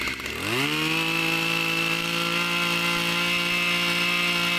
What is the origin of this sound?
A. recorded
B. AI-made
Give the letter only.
A